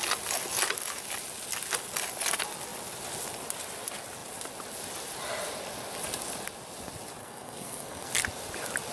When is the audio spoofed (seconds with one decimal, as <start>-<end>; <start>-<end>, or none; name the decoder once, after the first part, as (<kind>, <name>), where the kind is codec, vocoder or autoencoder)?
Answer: 7.2-8.1 (codec, SNAC)